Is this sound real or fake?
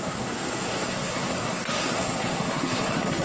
fake